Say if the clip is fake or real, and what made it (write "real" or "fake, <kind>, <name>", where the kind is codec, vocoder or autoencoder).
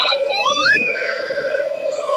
fake, codec, SNAC